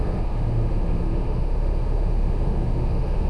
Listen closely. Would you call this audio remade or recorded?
remade